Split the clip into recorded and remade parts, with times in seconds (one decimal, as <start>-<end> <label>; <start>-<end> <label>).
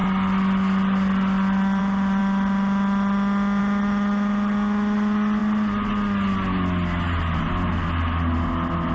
0.0-8.9 recorded